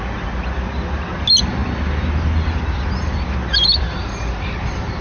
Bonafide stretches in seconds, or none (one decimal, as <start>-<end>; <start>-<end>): 0.0-5.0